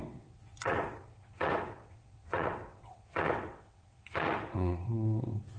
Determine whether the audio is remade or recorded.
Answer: remade